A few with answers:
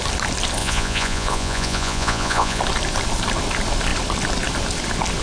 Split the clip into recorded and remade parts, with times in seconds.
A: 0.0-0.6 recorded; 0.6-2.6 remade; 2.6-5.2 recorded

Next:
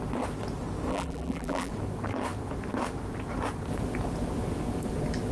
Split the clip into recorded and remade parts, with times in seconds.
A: 0.0-0.9 recorded; 0.9-1.7 remade; 1.7-5.3 recorded

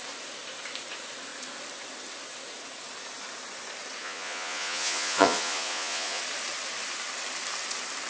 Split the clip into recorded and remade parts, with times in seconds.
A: 0.0-4.0 recorded; 4.0-6.2 remade; 6.2-8.1 recorded

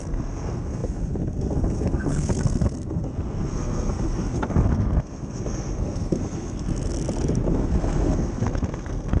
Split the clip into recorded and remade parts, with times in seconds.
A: 0.0-6.9 remade; 6.9-7.5 recorded; 7.5-9.2 remade